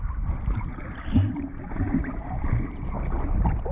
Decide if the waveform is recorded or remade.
recorded